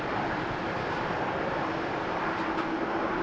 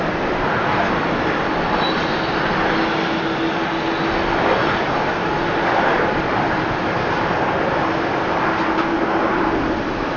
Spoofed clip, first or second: first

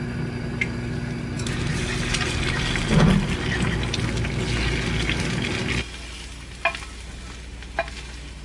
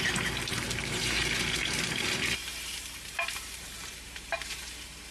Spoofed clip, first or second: second